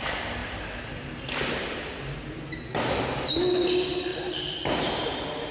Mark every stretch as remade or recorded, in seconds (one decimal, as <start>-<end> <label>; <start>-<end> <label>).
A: 0.0-4.1 recorded; 4.1-4.8 remade; 4.8-5.5 recorded